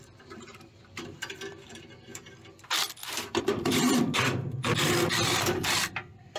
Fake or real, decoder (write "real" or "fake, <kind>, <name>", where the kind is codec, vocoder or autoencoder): fake, vocoder, BigVGAN v2